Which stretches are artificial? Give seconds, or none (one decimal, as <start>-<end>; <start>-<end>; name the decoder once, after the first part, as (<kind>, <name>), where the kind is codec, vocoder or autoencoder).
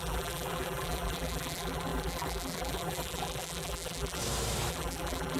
0.0-4.2 (vocoder, BigVGAN v2); 4.7-5.4